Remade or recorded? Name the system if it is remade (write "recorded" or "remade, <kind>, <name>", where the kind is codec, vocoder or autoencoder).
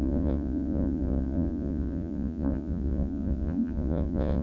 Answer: remade, vocoder, Vocos